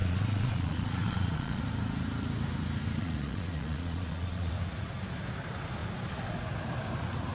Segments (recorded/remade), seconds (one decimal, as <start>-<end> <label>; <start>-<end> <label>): 0.0-1.6 remade; 1.6-3.0 recorded; 3.0-4.5 remade; 4.5-7.3 recorded